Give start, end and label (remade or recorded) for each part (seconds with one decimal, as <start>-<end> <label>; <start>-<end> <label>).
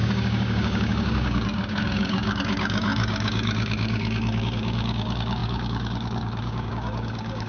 0.0-7.5 remade